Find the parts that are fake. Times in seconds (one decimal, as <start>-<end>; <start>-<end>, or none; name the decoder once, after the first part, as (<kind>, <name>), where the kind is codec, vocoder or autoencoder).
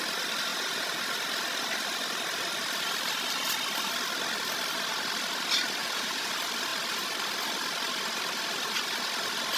0.5-1.0 (vocoder, Vocos); 5.8-6.3